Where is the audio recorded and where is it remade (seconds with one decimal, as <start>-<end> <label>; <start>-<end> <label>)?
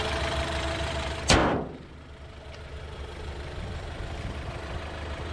0.0-5.3 recorded